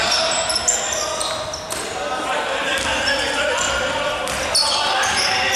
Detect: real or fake real